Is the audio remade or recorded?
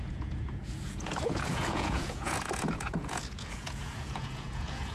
remade